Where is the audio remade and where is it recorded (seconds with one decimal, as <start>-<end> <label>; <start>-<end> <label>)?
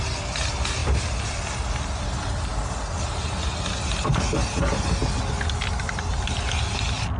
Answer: 0.0-0.8 recorded; 0.8-1.4 remade; 1.4-7.2 recorded